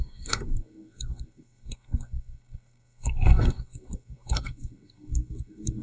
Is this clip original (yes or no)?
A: no